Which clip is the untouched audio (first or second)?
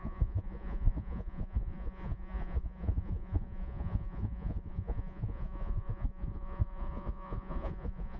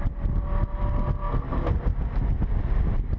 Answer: second